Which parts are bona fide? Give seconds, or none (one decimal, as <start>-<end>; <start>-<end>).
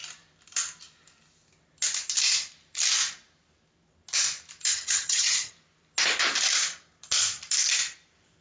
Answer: 0.0-4.7; 5.5-8.4